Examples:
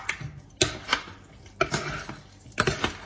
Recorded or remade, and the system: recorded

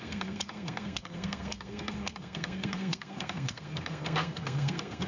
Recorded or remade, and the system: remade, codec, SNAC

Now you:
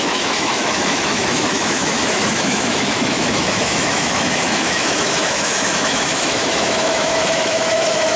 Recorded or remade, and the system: remade, autoencoder, DAC-VAE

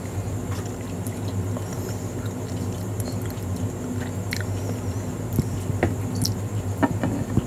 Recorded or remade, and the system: recorded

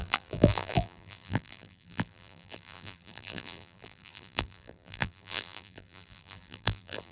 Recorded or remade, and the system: remade, vocoder, BigVGAN v2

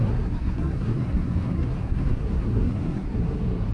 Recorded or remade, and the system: remade, codec, SNAC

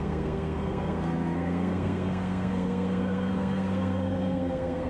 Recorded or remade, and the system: remade, codec, SNAC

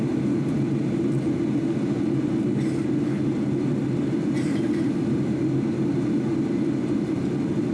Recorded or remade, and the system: recorded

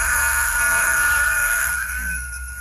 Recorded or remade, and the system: remade, codec, SNAC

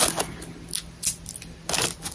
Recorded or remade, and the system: recorded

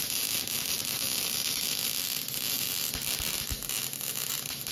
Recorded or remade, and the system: recorded